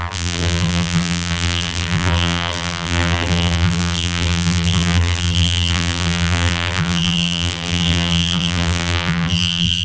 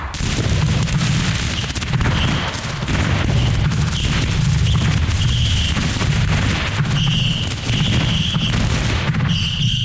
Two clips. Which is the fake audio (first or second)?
first